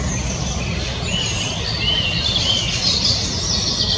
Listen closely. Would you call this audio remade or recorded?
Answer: recorded